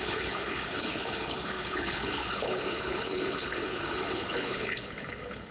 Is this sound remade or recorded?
remade